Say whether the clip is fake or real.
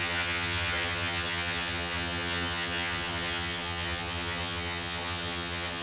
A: fake